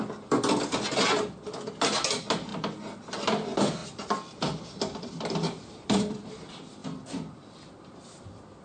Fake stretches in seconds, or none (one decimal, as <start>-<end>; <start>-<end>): 3.8-6.3; 6.8-7.6